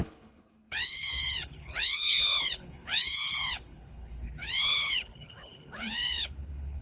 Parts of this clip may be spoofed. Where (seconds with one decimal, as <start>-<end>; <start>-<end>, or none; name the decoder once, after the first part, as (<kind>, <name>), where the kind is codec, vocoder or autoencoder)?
0.0-6.8 (codec, HILCodec)